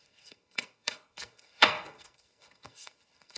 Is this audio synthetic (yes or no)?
yes